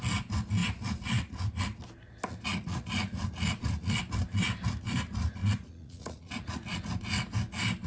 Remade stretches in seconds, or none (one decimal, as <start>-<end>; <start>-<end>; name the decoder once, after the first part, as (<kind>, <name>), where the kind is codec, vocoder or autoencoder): 2.5-4.0 (vocoder, Vocos); 5.4-6.8

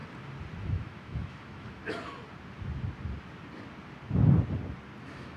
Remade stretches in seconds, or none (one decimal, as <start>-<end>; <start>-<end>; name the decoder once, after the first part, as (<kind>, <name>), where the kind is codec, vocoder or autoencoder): 0.7-1.8 (autoencoder, DAC-VAE); 5.0-5.4

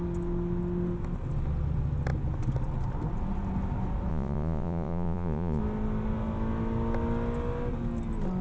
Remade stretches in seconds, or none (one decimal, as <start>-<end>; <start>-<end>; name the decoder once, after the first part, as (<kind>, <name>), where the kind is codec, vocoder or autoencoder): 4.1-5.6 (vocoder, Vocos)

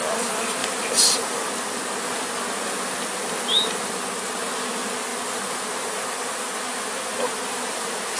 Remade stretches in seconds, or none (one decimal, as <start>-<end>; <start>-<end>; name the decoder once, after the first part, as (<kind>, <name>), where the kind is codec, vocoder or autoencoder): 0.6-1.8 (vocoder, BigVGAN v2)

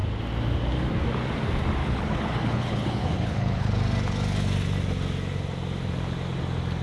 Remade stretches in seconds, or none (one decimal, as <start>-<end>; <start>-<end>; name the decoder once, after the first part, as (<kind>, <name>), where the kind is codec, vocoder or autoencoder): 1.8-3.7 (codec, HILCodec)

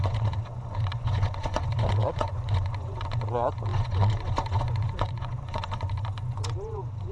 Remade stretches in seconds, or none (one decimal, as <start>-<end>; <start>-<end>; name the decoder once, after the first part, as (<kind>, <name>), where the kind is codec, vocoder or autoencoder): 0.0-7.1 (vocoder, Vocos)

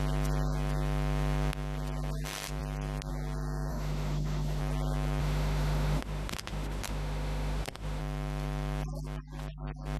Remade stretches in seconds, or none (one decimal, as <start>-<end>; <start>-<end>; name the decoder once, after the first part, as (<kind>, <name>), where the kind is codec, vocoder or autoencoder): 3.7-4.6 (autoencoder, DAC-VAE); 5.2-8.0

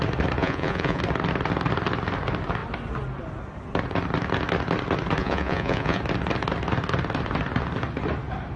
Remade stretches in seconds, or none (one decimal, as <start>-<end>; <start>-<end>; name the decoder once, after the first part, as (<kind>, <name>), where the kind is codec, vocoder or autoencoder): 0.4-1.0 (vocoder, Vocos); 5.2-6.0